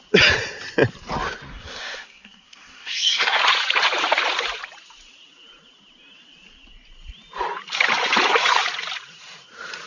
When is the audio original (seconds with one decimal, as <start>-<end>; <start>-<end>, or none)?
0.0-1.5; 3.4-9.9